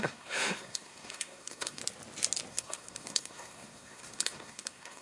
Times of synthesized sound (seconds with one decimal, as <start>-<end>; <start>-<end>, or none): 0.0-1.8; 2.5-5.0